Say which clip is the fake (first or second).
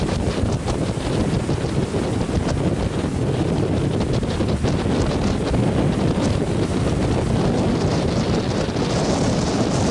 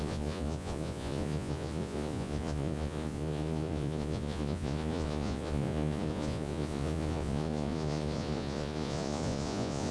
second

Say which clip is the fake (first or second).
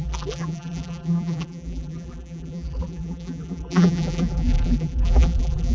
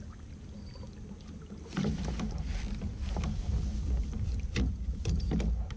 first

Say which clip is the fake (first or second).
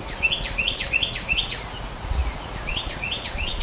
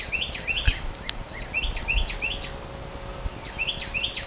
first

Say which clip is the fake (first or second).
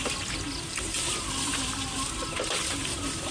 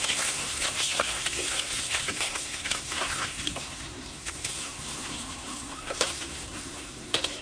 second